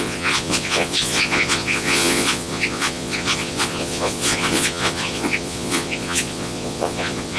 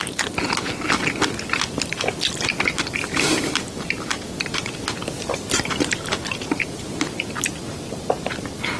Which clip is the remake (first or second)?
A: first